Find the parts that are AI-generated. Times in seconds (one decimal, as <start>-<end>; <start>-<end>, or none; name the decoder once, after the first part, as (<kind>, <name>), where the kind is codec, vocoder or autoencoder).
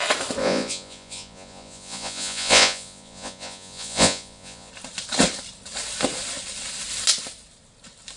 0.4-4.7 (vocoder, Vocos)